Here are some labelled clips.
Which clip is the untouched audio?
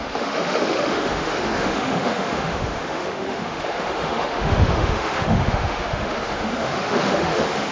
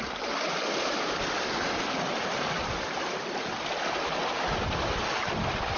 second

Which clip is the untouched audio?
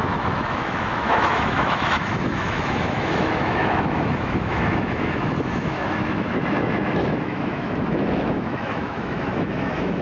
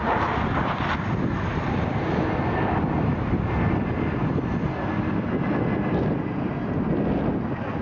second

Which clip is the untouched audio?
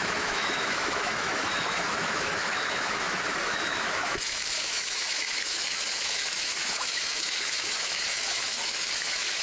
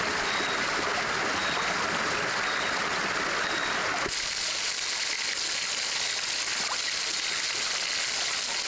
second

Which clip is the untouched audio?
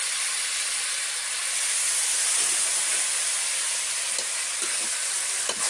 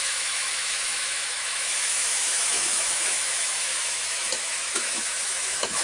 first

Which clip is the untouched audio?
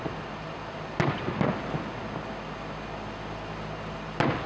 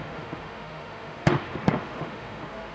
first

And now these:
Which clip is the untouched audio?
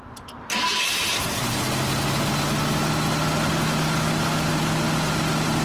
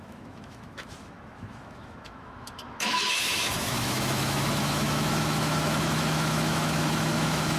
first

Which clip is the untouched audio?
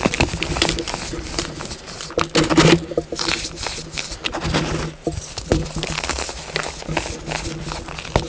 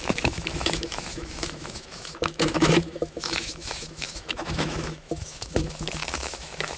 first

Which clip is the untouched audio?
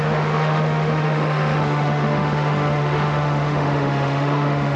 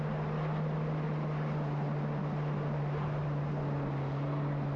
second